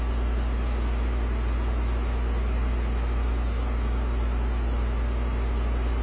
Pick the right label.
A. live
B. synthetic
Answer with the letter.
A